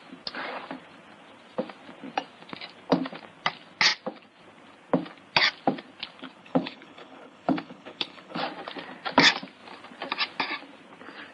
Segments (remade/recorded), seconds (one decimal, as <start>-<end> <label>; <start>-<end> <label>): 0.0-6.4 recorded; 6.4-8.4 remade; 8.4-11.3 recorded